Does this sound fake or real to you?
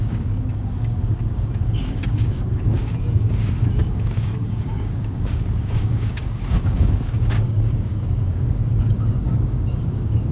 fake